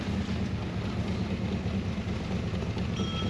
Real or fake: real